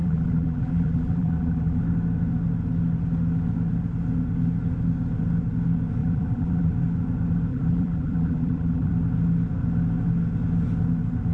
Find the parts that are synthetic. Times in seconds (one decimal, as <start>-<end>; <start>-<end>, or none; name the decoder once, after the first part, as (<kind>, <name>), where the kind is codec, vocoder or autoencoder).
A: 0.0-1.8 (vocoder, BigVGAN v2); 6.0-6.7; 7.5-8.9